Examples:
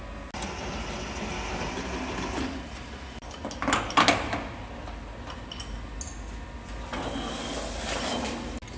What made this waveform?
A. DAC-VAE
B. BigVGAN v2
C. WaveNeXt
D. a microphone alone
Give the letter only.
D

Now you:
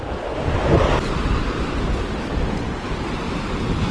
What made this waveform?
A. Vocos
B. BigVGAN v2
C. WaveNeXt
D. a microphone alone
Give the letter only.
D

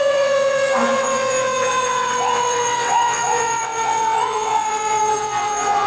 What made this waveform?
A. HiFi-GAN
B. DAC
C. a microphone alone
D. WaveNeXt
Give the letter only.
D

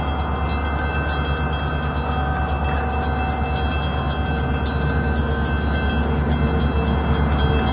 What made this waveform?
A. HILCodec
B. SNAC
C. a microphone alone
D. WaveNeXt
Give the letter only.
C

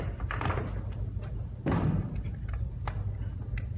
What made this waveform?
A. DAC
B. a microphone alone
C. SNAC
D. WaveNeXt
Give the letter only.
B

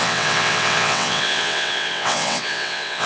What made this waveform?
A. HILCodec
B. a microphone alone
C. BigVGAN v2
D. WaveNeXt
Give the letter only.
D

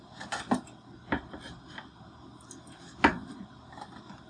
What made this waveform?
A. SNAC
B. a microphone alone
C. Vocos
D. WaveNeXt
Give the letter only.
B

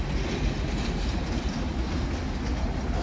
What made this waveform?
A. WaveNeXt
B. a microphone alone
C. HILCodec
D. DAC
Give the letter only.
B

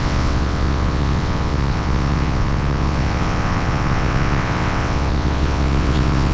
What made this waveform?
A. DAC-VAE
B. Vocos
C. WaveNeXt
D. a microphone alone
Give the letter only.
C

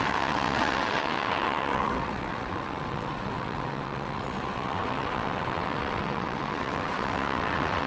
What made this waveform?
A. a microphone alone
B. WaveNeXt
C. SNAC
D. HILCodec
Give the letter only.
B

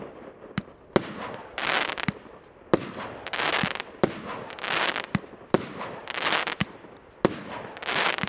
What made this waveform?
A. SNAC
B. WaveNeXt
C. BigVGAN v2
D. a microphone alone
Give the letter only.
D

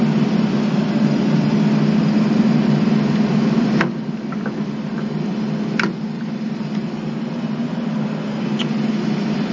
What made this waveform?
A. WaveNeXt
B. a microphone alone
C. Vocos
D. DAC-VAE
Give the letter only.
B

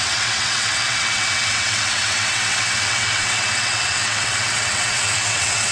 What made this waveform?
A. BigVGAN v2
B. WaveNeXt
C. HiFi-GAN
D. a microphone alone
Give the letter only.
B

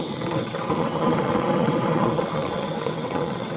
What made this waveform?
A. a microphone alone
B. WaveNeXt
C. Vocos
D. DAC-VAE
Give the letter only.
B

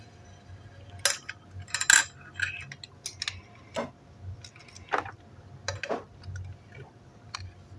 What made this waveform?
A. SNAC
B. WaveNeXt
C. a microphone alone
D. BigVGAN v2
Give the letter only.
C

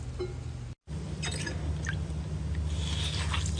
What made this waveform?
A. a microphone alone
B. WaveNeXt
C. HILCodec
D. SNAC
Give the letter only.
A